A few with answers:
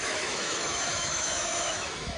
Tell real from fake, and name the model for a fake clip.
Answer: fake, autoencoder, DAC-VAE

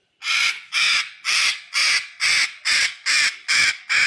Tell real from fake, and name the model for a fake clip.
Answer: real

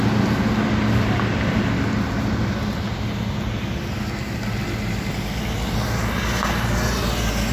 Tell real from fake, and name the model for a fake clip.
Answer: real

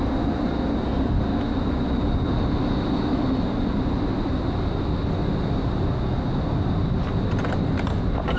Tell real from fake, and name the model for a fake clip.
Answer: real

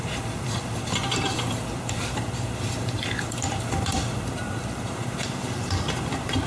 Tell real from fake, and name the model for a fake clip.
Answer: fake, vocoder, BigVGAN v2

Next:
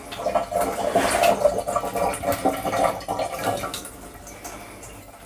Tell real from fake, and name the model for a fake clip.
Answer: real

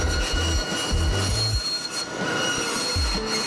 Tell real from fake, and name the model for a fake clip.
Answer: real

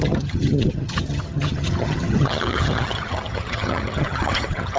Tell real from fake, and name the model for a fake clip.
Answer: fake, vocoder, HiFi-GAN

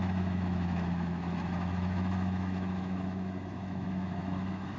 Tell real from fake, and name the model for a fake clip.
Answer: fake, autoencoder, DAC-VAE